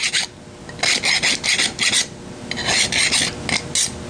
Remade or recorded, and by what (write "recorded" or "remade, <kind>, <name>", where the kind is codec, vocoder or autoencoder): recorded